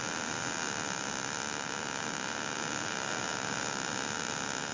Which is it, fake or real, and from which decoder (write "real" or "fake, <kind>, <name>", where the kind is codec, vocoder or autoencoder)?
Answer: real